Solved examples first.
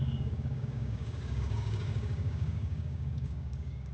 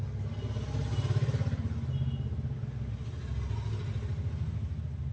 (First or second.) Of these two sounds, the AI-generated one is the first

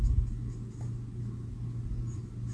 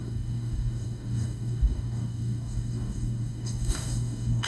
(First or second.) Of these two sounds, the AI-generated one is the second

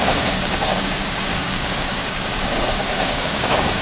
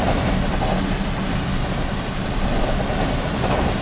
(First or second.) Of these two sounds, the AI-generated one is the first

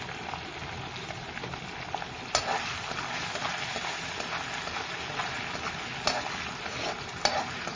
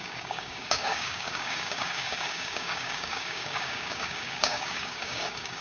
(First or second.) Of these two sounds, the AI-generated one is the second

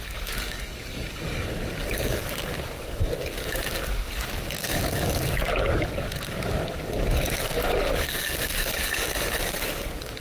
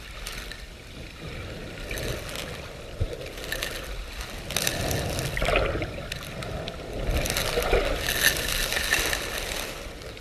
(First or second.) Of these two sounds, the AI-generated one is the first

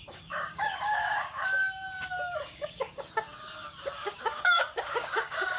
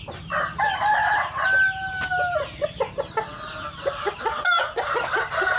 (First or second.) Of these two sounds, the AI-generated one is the first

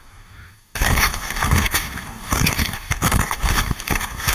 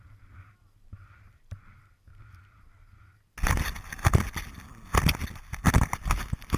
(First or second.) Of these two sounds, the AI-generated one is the first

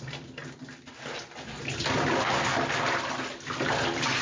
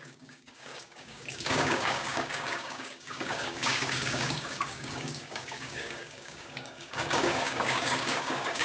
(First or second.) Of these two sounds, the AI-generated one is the second